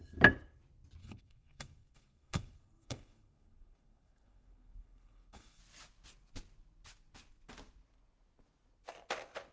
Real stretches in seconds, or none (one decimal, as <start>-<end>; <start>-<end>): 0.0-1.0; 5.6-9.5